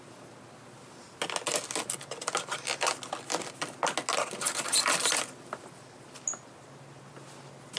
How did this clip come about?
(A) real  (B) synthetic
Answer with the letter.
A